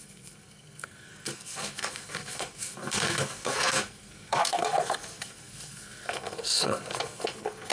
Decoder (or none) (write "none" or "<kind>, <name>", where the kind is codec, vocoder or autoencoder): codec, SNAC